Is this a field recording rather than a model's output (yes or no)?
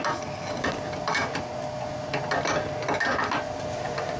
yes